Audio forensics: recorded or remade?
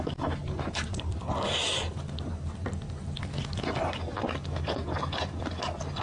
recorded